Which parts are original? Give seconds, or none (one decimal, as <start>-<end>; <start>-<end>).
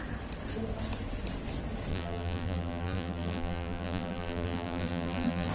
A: 0.0-1.9